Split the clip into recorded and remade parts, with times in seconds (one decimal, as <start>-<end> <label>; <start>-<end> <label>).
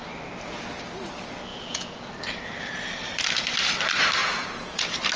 0.0-1.5 recorded; 1.5-2.1 remade; 2.1-4.2 recorded; 4.2-4.8 remade; 4.8-5.2 recorded